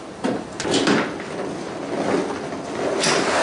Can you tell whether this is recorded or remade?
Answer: recorded